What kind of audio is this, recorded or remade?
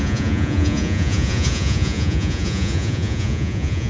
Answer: remade